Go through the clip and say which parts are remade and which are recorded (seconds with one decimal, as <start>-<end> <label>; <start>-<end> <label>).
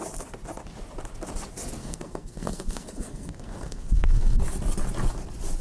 0.0-1.8 recorded; 1.8-4.4 remade; 4.4-5.6 recorded